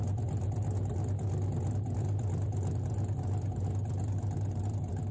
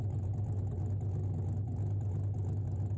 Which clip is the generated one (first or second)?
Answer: first